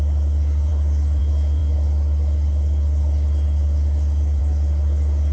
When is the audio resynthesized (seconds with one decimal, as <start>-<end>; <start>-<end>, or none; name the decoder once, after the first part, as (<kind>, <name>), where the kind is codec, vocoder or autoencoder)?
none